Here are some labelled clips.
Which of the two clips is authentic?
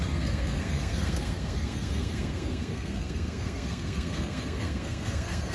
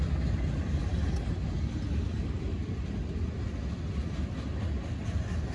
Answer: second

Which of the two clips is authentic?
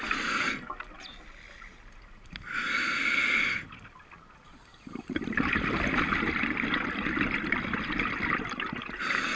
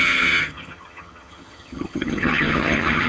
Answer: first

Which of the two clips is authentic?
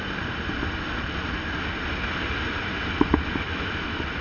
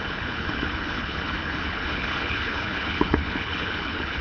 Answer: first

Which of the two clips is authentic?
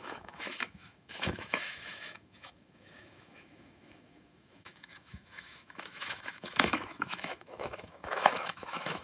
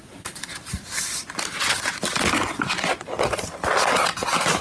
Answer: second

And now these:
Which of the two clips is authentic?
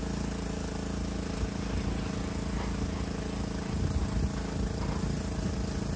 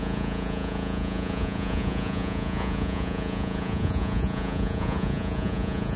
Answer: first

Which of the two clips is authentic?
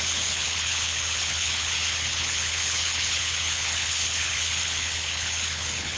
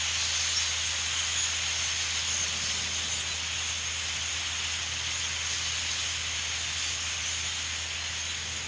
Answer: second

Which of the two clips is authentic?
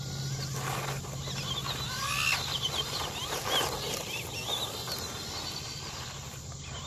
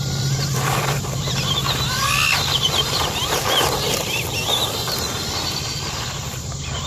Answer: first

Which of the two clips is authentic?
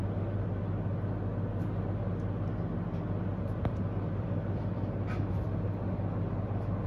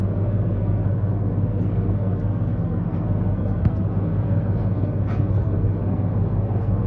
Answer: first